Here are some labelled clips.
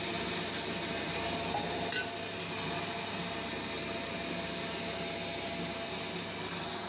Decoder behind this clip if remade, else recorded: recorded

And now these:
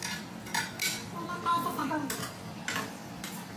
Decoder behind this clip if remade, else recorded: recorded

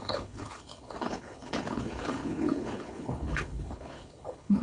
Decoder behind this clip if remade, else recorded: remade, codec, HILCodec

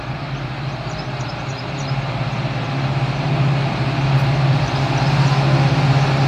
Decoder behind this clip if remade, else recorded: recorded